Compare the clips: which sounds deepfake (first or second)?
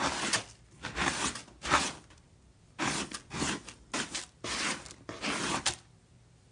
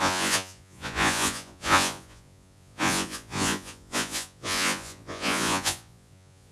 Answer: second